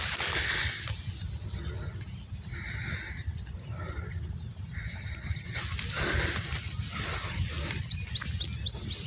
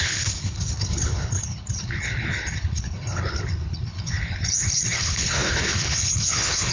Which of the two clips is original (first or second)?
first